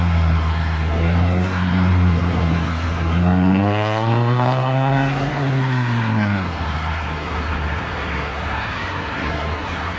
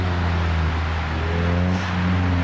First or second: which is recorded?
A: second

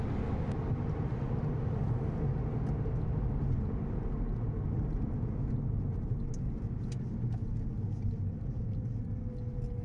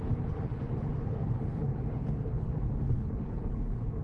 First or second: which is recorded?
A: first